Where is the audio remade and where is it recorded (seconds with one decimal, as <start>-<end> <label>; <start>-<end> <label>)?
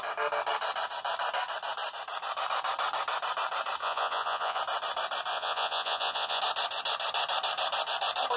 0.0-3.8 recorded; 3.8-4.6 remade; 4.6-5.3 recorded; 5.3-6.4 remade; 6.4-8.4 recorded